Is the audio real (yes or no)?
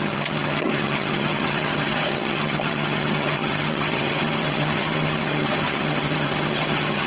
no